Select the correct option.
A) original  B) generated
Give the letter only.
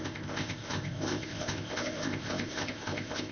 B